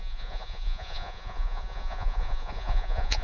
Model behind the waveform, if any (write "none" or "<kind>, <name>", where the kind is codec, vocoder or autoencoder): vocoder, Vocos